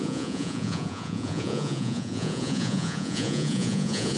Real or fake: fake